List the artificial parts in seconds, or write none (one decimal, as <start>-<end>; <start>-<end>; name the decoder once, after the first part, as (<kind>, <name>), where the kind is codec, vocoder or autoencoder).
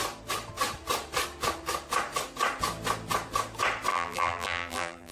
3.9-5.1 (vocoder, BigVGAN v2)